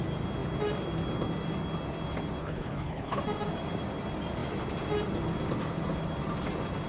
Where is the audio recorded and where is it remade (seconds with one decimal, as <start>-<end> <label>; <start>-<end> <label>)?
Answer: 0.0-2.4 recorded; 2.4-3.2 remade; 3.2-6.9 recorded